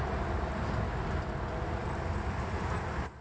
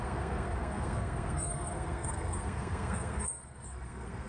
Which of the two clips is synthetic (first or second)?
second